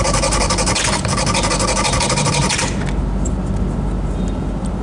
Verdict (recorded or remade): recorded